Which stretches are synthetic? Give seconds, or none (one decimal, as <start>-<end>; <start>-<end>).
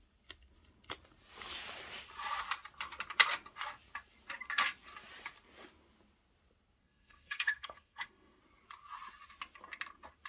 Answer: 6.8-8.4